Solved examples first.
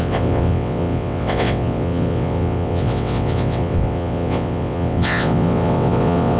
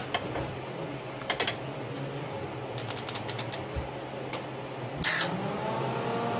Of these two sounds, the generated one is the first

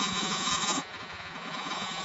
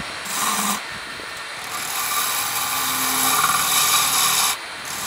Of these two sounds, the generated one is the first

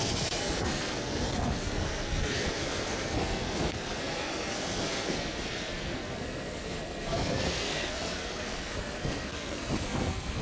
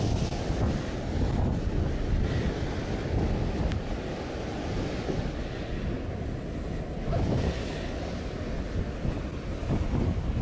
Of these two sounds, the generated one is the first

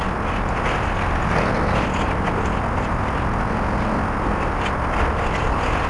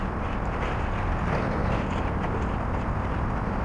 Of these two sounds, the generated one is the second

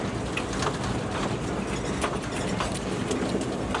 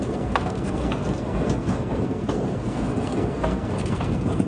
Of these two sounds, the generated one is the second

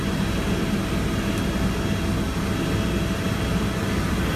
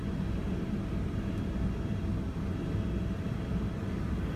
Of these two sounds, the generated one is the second